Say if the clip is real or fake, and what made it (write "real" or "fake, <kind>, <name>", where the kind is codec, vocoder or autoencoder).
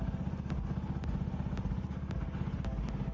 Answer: real